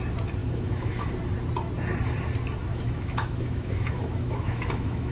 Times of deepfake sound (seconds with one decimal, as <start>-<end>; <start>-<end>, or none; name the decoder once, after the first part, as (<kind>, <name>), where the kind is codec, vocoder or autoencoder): 0.4-1.1 (autoencoder, DAC-VAE); 2.6-5.1

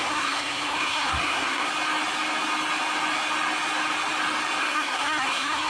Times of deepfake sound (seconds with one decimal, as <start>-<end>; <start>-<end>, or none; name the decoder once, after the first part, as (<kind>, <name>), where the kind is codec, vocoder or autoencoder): 0.0-1.7 (codec, SNAC); 4.6-5.7

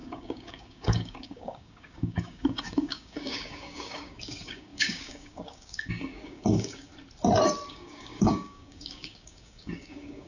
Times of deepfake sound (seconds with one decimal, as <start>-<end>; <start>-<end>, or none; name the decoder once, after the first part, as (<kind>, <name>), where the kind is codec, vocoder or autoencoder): 0.0-6.9 (codec, DAC); 7.7-10.3

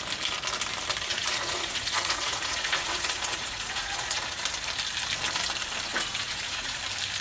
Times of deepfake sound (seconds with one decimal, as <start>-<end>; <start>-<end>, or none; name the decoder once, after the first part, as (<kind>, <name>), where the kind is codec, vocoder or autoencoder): 1.1-4.4 (vocoder, Vocos); 5.9-6.8

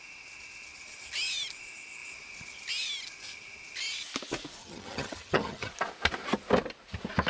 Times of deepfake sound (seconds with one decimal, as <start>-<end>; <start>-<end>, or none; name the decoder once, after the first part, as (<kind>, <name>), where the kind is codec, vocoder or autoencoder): 4.6-5.7 (vocoder, HiFi-GAN)

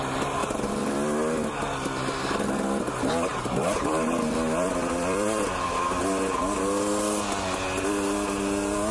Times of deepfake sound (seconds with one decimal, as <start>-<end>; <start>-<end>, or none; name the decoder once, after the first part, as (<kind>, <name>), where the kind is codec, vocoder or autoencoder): 0.4-0.9 (vocoder, BigVGAN v2); 3.3-6.0

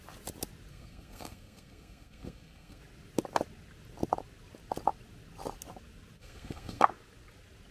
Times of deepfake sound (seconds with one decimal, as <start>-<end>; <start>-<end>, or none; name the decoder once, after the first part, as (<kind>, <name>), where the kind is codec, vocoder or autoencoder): 0.7-2.8 (codec, SNAC); 6.2-6.8